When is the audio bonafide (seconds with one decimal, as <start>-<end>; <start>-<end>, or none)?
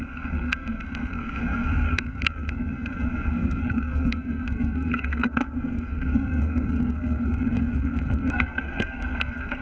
none